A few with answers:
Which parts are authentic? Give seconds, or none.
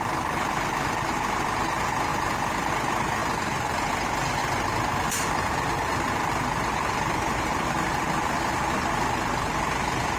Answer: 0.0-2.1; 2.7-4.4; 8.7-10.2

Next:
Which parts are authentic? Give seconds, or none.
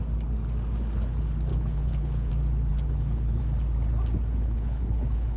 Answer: 0.0-1.5; 2.3-2.7; 3.4-4.4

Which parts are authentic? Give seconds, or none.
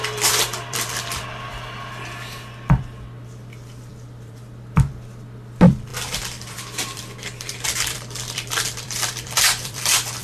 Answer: 1.5-3.9; 4.7-5.9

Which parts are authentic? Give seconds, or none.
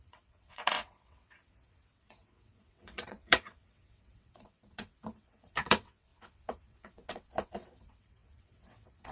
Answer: none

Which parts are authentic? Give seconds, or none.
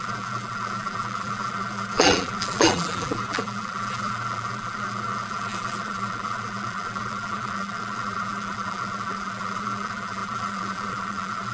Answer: none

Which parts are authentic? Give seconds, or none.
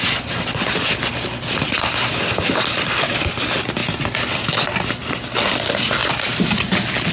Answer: 0.0-7.1